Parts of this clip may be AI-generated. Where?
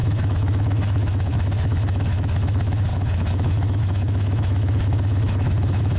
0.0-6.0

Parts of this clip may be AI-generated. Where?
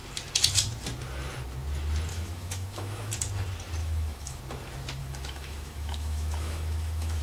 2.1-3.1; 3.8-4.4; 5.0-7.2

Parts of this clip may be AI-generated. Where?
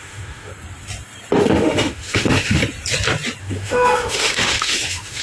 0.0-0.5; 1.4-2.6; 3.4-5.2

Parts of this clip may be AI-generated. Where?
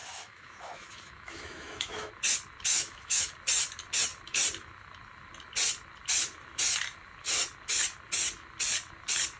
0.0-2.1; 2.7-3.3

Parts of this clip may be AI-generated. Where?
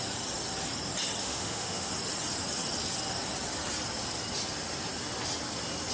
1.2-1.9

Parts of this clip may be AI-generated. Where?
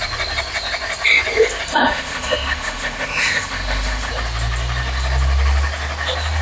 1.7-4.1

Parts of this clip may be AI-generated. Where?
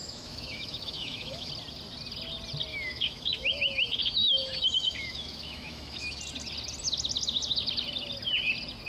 0.0-1.5; 2.7-6.2